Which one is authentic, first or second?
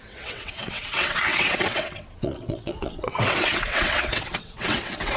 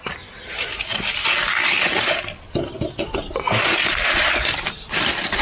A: second